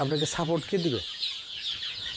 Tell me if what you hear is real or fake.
fake